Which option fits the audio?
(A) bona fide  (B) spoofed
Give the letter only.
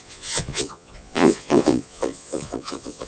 B